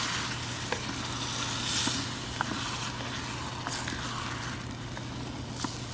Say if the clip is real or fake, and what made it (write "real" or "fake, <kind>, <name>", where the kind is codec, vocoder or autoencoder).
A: real